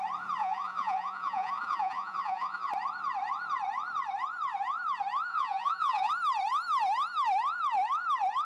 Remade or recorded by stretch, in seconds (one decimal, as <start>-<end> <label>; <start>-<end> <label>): 0.0-0.4 recorded; 0.4-2.7 remade; 2.7-5.3 recorded; 5.3-6.1 remade; 6.1-8.4 recorded